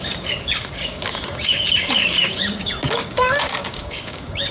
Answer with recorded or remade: remade